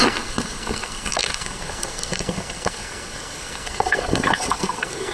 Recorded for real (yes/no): no